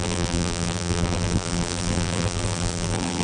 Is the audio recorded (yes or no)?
no